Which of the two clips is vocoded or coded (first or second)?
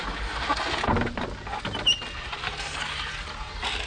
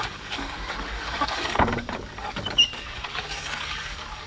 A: second